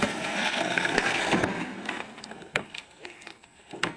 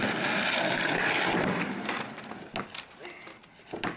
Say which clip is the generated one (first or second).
first